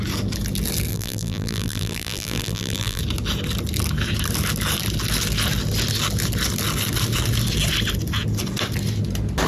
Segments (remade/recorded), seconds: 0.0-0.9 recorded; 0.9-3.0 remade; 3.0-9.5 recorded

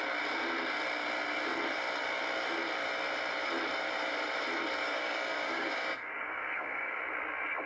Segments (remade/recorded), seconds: 0.0-4.8 recorded; 4.8-7.0 remade; 7.0-7.7 recorded

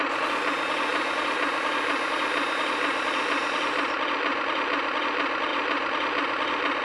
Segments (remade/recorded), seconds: 0.0-0.9 recorded; 0.9-5.0 remade; 5.0-5.5 recorded; 5.5-6.8 remade

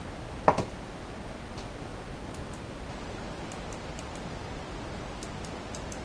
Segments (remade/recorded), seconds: 0.0-6.0 recorded

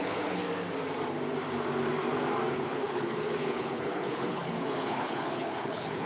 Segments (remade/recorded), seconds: 0.0-0.4 remade; 0.4-2.5 recorded; 2.5-6.1 remade

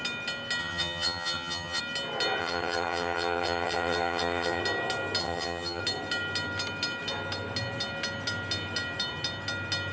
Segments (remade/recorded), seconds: 0.0-0.6 recorded; 0.6-1.8 remade; 1.8-2.4 recorded; 2.4-4.6 remade; 4.6-5.2 recorded; 5.2-5.8 remade; 5.8-9.9 recorded

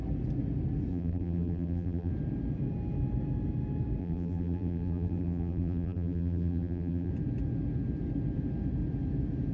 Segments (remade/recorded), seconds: 0.0-0.9 recorded; 0.9-2.1 remade; 2.1-4.0 recorded; 4.0-7.1 remade; 7.1-9.5 recorded

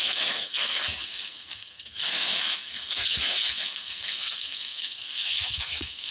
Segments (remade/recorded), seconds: 0.0-6.1 remade